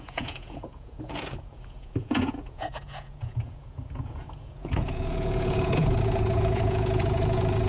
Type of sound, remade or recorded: remade